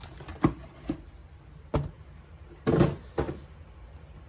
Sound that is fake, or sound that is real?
real